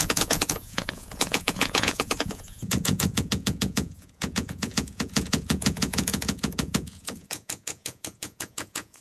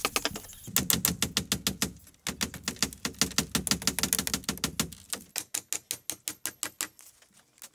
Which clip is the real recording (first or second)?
second